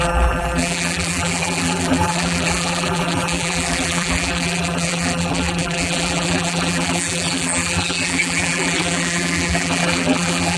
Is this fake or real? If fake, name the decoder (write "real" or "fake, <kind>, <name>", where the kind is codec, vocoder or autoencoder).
fake, vocoder, BigVGAN v2